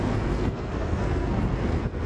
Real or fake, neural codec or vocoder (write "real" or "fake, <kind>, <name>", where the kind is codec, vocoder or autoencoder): fake, codec, SNAC